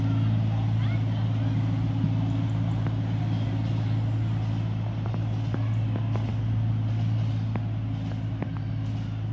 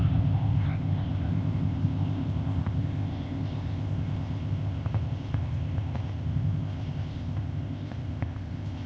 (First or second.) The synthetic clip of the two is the second